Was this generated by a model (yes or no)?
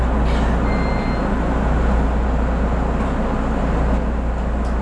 no